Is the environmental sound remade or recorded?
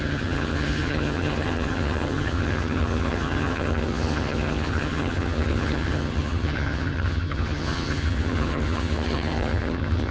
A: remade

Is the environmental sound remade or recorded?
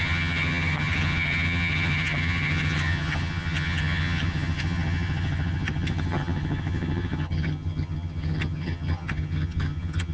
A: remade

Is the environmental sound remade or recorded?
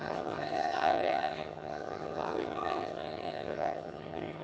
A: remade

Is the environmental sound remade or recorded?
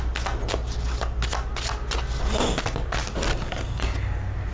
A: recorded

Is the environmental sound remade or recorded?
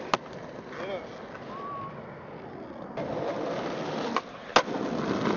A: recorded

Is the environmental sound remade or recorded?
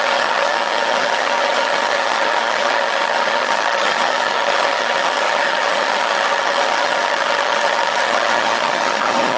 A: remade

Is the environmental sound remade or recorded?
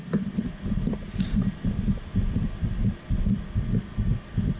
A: recorded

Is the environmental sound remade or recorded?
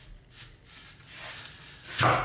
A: recorded